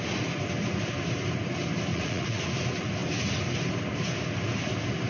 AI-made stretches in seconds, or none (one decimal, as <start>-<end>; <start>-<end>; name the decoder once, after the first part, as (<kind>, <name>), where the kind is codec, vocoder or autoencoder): 1.9-2.4 (vocoder, Vocos)